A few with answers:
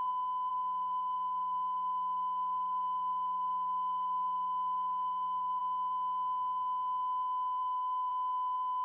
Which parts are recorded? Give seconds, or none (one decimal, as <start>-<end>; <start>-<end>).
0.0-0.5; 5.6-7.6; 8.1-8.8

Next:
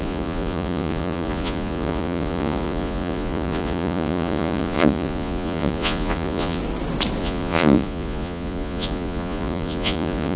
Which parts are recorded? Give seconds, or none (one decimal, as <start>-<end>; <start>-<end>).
6.6-7.2

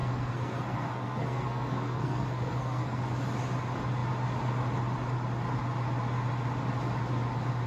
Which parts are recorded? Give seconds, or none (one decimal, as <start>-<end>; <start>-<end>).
3.0-7.7

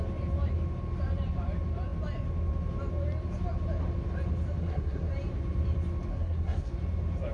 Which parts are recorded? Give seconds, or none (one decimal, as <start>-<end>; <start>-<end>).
0.0-4.6; 5.1-6.1; 6.7-7.3